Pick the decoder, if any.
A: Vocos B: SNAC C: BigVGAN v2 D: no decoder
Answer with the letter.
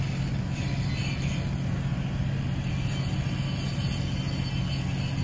D